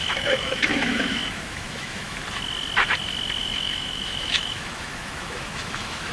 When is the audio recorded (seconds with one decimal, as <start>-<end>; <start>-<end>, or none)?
2.2-3.4